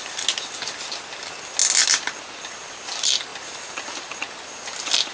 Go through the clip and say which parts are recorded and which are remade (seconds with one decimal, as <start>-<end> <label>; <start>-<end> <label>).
0.0-5.1 recorded